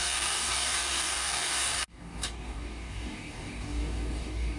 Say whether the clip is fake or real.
fake